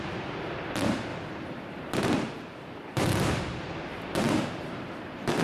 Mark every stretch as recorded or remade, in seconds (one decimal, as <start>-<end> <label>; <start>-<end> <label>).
0.0-3.9 remade; 3.9-4.5 recorded; 4.5-5.4 remade